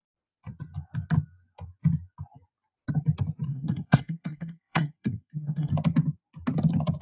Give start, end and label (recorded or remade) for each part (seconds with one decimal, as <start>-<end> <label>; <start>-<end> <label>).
0.0-3.5 recorded; 3.5-5.7 remade; 5.7-7.0 recorded